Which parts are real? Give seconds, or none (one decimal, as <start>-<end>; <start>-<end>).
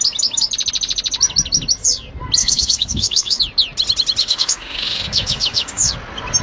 0.0-2.4; 3.4-4.2; 5.9-6.4